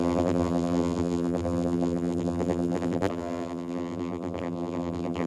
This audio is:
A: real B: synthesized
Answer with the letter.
B